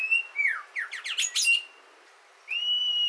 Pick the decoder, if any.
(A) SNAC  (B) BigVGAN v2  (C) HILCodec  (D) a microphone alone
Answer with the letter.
D